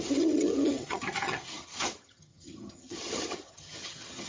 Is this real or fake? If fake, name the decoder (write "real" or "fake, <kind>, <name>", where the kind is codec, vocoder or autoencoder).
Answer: fake, vocoder, HiFi-GAN